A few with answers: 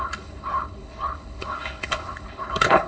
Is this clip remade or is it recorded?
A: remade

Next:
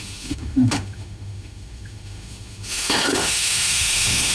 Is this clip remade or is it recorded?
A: remade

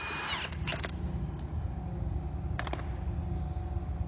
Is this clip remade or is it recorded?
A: recorded